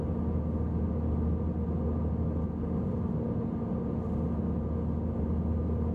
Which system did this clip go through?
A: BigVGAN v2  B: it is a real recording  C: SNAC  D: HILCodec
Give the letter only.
B